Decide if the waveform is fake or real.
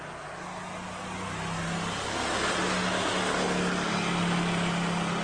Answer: real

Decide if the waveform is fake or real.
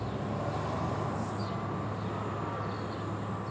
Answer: real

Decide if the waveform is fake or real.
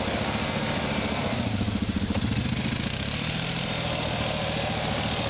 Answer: real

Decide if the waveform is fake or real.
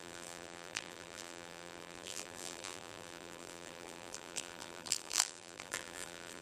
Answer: fake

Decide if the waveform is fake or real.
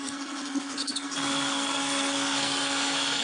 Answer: fake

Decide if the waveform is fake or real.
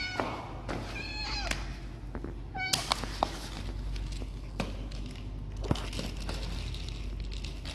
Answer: real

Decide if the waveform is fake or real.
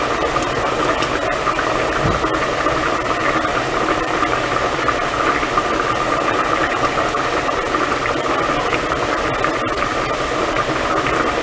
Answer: real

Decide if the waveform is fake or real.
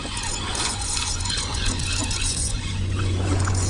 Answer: fake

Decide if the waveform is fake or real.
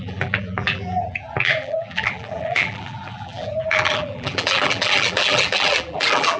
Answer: fake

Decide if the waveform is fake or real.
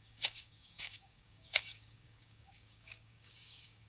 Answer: fake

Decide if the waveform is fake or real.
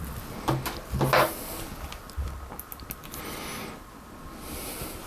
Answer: real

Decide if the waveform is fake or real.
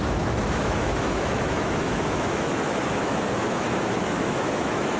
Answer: fake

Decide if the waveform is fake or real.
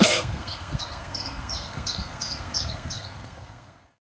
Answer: fake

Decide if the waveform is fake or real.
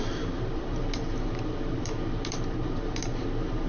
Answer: fake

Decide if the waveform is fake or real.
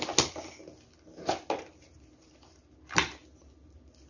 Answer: real